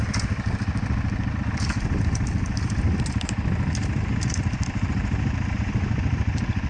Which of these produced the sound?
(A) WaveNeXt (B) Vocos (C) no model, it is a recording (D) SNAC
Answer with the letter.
C